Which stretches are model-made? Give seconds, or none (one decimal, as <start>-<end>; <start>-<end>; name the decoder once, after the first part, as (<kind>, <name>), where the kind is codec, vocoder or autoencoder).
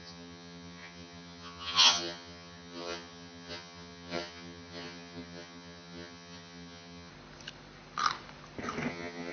0.0-7.1 (vocoder, HiFi-GAN); 8.9-9.3